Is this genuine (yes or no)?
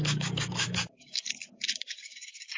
no